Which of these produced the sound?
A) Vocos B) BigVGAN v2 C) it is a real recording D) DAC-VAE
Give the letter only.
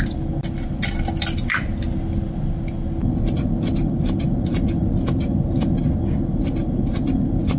C